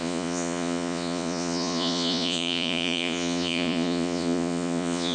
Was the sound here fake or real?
fake